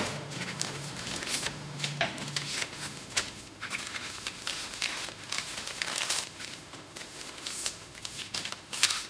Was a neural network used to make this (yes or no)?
yes